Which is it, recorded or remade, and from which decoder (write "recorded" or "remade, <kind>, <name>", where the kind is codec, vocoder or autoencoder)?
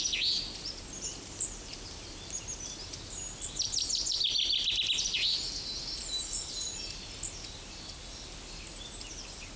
remade, vocoder, BigVGAN v2